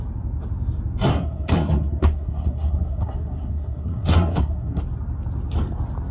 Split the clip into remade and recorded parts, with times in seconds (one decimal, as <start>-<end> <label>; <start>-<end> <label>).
0.0-1.1 recorded; 1.1-4.8 remade; 4.8-6.1 recorded